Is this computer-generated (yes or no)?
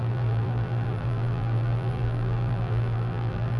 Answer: yes